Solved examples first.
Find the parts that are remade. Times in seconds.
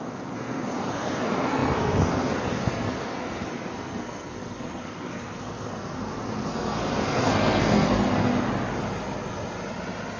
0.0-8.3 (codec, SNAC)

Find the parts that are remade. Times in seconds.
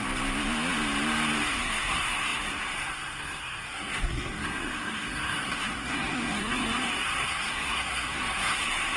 1.5-9.0 (codec, SNAC)